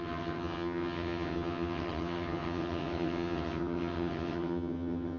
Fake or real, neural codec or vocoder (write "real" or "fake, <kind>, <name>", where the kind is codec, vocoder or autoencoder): fake, vocoder, HiFi-GAN